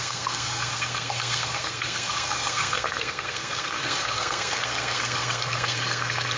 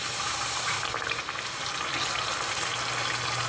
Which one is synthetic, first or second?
first